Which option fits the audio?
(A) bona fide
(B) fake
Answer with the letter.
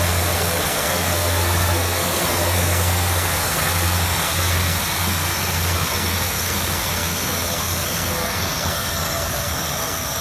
B